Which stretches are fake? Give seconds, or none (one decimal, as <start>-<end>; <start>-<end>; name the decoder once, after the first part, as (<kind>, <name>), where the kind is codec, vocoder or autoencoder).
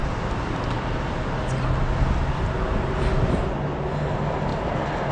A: none